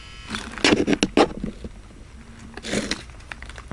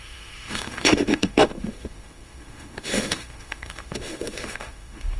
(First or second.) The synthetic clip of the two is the second